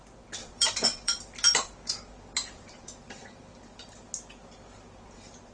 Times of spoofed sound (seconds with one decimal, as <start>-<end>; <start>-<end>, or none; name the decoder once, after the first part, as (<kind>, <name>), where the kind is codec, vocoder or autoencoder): 0.4-3.7 (vocoder, BigVGAN v2)

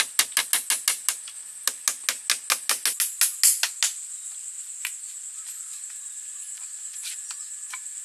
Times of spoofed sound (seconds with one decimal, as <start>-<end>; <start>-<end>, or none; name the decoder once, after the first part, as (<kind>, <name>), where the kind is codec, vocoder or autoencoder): none

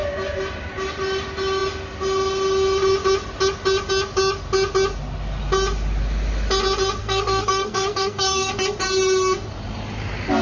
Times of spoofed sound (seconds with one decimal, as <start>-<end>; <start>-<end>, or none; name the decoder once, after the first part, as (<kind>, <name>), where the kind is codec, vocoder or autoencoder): 7.0-8.5 (codec, SNAC)

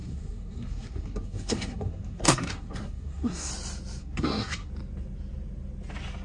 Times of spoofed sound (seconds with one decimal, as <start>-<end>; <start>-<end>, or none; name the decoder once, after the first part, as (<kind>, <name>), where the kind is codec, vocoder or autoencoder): 0.0-3.5 (codec, SNAC); 4.0-4.7

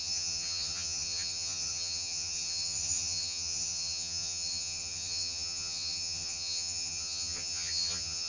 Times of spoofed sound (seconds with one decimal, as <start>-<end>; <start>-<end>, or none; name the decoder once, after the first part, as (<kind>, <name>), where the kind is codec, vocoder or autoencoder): 0.0-8.3 (vocoder, HiFi-GAN)

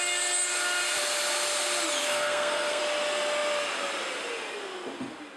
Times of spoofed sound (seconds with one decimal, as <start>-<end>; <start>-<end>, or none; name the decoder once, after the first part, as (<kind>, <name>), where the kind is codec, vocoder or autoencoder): 2.0-2.8 (codec, SNAC)

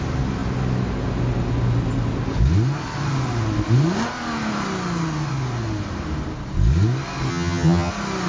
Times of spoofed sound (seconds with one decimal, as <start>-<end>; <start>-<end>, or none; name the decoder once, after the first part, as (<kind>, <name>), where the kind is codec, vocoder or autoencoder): 7.3-7.9 (vocoder, HiFi-GAN)